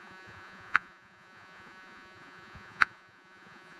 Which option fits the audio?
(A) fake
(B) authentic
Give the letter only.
A